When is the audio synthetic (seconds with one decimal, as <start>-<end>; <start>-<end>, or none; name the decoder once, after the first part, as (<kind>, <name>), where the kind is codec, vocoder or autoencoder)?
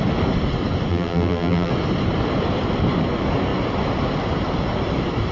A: 0.9-1.7 (vocoder, BigVGAN v2)